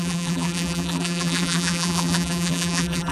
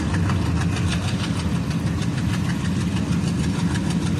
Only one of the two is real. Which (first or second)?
second